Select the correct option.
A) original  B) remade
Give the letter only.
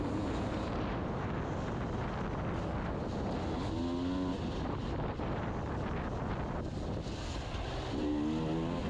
A